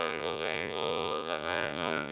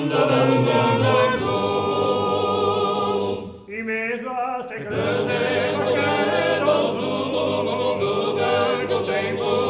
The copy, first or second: first